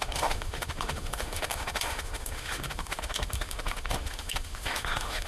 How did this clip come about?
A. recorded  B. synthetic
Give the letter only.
B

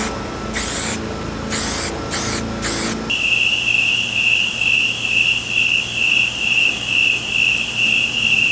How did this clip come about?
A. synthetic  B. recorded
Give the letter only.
B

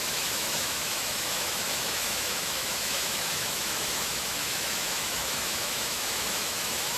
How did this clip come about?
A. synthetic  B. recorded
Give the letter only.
A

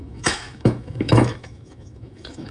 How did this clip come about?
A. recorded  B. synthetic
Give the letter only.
B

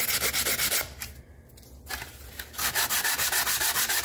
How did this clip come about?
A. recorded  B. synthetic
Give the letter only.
A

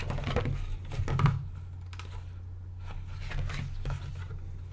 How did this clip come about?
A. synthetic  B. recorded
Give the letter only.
B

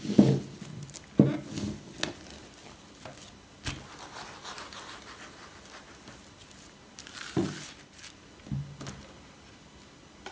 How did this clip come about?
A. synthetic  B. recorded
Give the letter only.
B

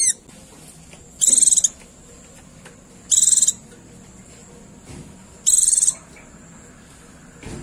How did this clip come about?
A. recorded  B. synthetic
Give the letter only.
A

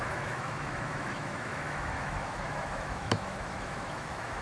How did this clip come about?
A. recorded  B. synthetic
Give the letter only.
B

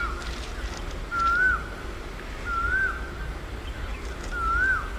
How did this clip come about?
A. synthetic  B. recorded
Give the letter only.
B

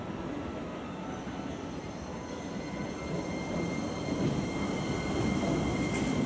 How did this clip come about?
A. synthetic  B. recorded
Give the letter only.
B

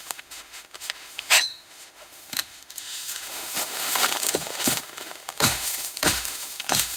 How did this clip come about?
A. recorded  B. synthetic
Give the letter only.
B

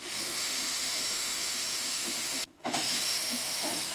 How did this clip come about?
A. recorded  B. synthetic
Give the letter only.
B